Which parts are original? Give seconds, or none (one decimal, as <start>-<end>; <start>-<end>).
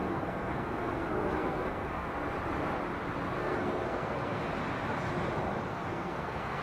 2.1-3.4; 4.4-5.7